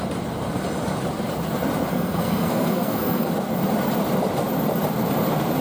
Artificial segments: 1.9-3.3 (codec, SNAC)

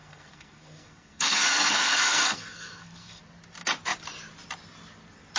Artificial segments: 0.0-3.2 (codec, SNAC)

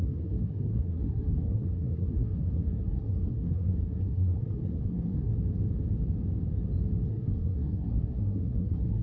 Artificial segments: 0.0-5.3 (codec, SNAC); 7.1-9.0

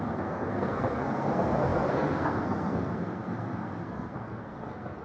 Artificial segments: 0.0-5.0 (codec, SNAC)

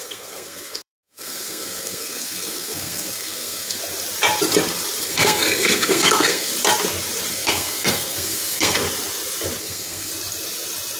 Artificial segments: 0.0-3.8 (codec, SNAC); 5.0-6.5; 7.3-8.8; 9.6-10.1

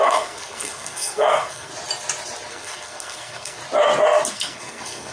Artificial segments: 0.0-1.7 (codec, SNAC); 2.5-3.6; 4.3-5.1

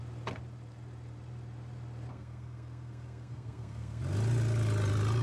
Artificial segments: 2.1-4.0 (codec, SNAC)